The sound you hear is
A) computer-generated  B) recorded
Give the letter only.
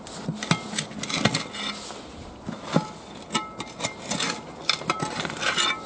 B